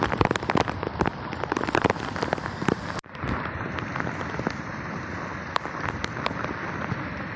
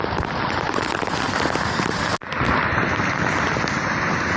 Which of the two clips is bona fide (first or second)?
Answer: second